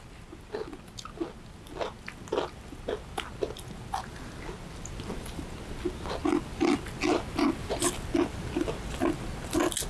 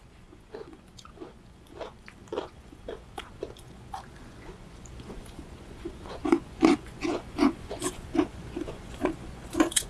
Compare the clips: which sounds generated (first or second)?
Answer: second